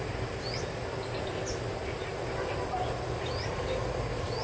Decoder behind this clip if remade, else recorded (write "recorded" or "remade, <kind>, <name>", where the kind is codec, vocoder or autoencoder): recorded